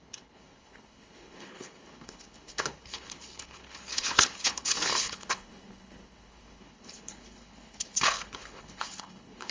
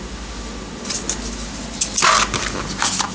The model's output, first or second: first